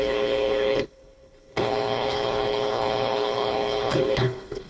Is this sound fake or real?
fake